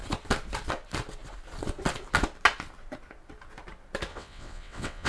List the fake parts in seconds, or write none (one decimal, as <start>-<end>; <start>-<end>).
4.1-5.1